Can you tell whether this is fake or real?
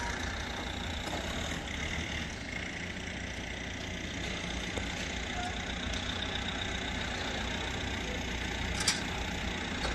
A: real